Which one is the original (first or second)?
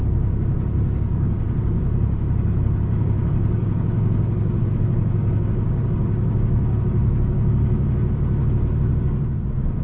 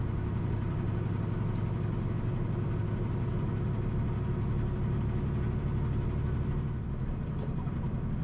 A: second